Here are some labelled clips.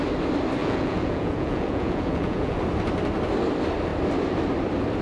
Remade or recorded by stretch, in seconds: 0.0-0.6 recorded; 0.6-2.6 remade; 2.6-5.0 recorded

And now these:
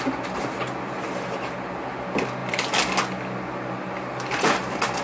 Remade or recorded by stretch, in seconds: 0.0-5.0 recorded

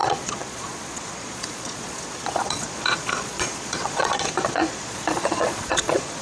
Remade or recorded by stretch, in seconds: 0.0-6.2 remade

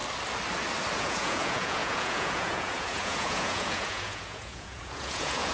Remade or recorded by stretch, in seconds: 0.0-1.0 recorded; 1.0-5.5 remade

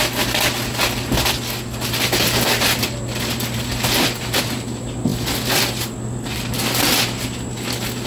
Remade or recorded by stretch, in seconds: 0.0-8.1 recorded